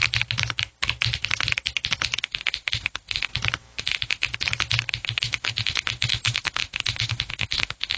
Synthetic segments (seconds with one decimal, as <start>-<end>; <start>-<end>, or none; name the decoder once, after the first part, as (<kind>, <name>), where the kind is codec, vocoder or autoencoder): 2.2-3.3 (autoencoder, DAC-VAE); 3.8-4.3; 4.9-8.0